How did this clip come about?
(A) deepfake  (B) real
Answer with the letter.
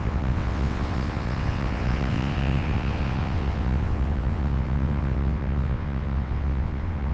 A